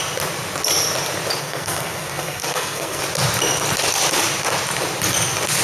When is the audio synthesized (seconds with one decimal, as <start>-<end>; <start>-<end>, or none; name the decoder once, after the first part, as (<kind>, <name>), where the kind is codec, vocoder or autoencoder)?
1.4-3.0 (codec, SNAC)